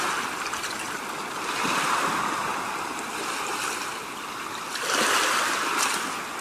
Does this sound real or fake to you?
real